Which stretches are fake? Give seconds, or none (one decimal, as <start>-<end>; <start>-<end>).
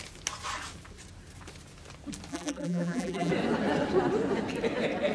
2.3-3.3